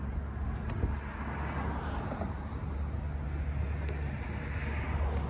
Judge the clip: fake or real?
real